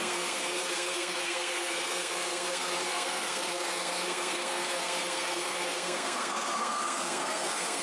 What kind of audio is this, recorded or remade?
remade